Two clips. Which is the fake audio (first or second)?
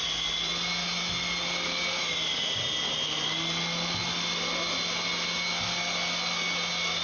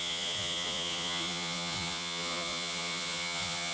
second